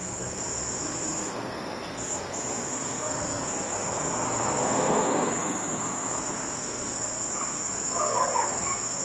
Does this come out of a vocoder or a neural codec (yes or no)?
yes